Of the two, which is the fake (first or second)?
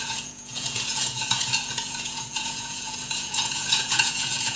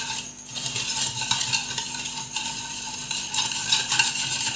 first